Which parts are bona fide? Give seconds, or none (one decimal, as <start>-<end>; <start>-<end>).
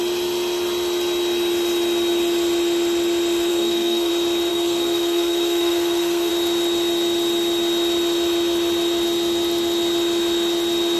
0.0-3.5; 4.1-4.5; 6.3-11.0